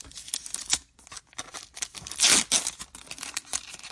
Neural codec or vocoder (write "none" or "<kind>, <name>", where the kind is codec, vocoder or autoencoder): none